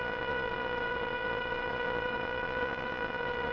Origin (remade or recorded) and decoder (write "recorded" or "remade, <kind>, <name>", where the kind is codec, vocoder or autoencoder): remade, vocoder, Vocos